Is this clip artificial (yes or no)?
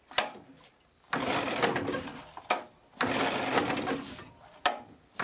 no